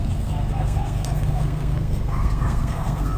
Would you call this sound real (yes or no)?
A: no